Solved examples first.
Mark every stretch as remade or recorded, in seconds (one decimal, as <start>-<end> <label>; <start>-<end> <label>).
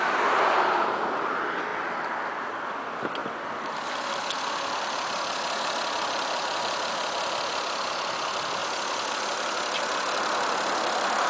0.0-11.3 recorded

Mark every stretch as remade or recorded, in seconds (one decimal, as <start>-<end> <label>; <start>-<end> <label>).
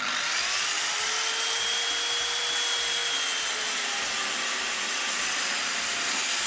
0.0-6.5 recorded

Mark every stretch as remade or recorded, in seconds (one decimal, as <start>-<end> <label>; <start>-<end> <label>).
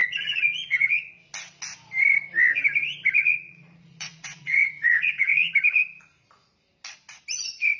0.0-1.1 remade; 1.1-3.3 recorded; 3.3-5.5 remade; 5.5-7.8 recorded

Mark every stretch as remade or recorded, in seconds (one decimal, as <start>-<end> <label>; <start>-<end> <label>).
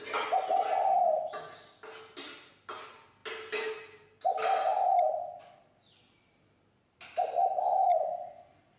0.0-8.8 recorded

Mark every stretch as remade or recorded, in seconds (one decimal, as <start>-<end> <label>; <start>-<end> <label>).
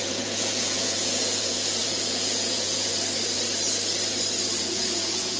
0.0-2.9 remade; 2.9-4.6 recorded; 4.6-5.4 remade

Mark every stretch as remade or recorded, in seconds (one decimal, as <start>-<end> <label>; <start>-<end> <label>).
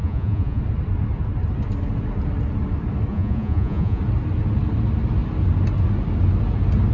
0.0-0.6 remade; 0.6-3.1 recorded; 3.1-4.0 remade; 4.0-6.9 recorded